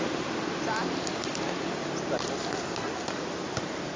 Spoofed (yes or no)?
no